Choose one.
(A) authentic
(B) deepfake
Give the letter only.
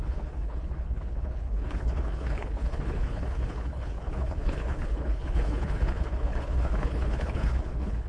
B